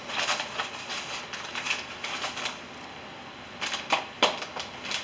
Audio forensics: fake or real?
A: real